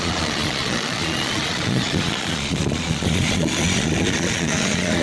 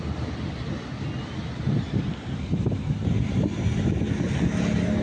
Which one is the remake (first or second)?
first